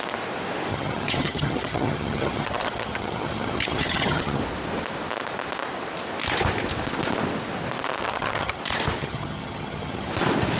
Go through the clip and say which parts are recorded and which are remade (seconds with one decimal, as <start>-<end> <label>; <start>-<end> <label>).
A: 0.0-0.7 recorded; 0.7-4.4 remade; 4.4-8.0 recorded; 8.0-8.6 remade; 8.6-9.0 recorded; 9.0-10.1 remade; 10.1-10.6 recorded